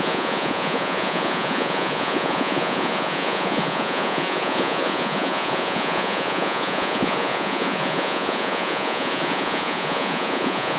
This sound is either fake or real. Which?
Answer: fake